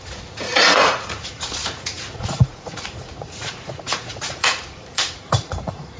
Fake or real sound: fake